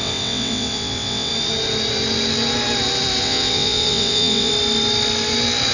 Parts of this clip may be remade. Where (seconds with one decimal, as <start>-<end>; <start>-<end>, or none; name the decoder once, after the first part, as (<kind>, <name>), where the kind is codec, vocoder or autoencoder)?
0.0-1.3 (vocoder, WaveNeXt); 3.2-4.5